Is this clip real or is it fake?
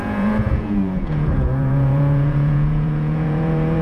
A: fake